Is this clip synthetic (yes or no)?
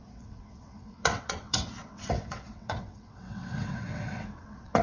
yes